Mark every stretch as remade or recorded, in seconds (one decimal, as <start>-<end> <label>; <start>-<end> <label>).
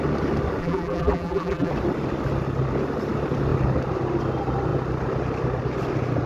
0.0-0.6 recorded; 0.6-1.7 remade; 1.7-6.3 recorded